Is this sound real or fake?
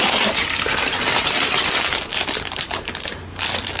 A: real